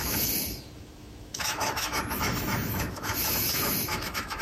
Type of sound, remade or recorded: remade